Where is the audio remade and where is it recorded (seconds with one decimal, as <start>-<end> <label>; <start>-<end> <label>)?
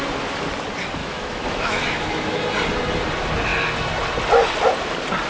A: 0.0-1.0 recorded; 1.0-2.4 remade; 2.4-5.3 recorded